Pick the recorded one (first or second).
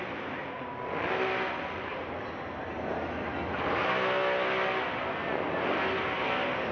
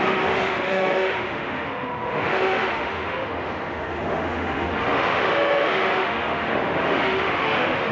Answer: first